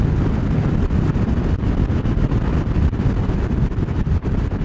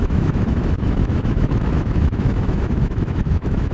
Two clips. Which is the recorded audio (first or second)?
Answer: first